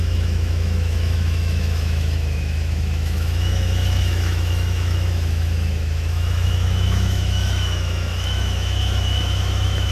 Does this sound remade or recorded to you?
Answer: remade